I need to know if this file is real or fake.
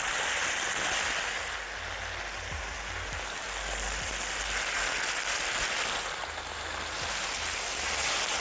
real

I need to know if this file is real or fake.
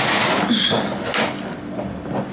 real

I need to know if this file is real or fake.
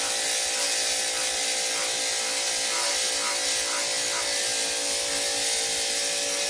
real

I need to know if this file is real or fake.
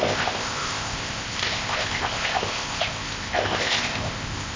fake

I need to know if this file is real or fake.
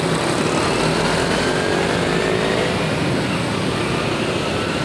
real